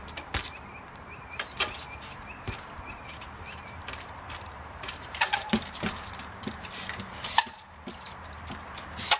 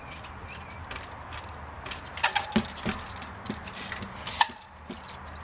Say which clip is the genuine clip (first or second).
second